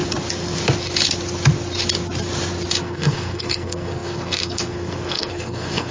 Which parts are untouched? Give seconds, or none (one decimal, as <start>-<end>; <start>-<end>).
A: 0.0-2.8